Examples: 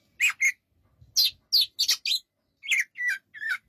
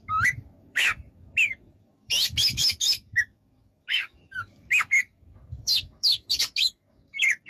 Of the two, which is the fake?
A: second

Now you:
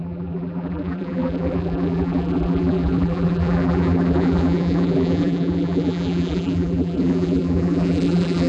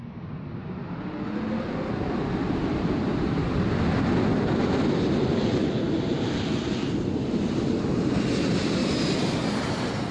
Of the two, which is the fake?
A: first